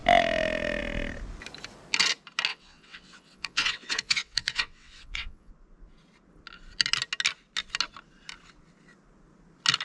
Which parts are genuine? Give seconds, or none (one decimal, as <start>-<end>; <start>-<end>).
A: 0.0-2.5; 5.5-9.8